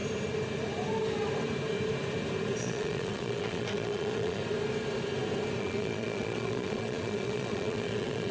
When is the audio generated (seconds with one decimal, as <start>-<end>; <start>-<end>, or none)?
2.6-4.4; 5.6-8.3